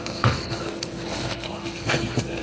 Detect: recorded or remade remade